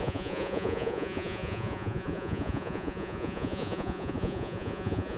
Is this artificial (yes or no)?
yes